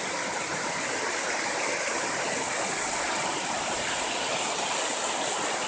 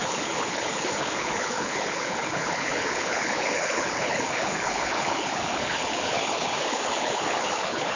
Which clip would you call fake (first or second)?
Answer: second